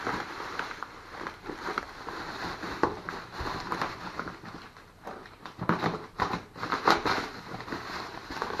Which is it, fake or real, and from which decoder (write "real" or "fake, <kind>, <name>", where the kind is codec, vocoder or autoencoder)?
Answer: fake, vocoder, BigVGAN v2